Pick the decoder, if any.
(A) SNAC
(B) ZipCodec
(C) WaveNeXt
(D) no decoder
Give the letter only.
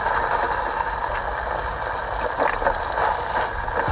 D